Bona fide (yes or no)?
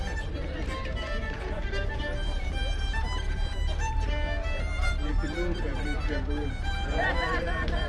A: no